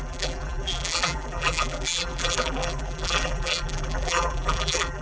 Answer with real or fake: fake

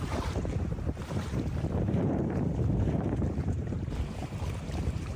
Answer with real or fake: fake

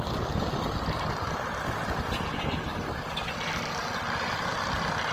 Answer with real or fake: real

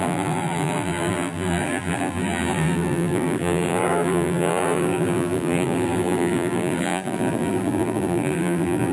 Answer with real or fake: fake